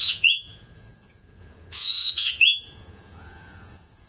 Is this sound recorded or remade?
remade